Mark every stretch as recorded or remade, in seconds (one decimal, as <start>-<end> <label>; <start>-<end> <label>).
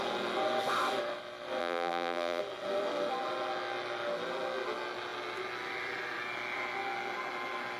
0.0-1.6 recorded; 1.6-2.4 remade; 2.4-7.8 recorded